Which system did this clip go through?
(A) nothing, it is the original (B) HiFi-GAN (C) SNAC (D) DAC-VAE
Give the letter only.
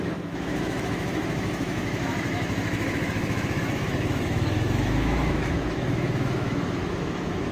D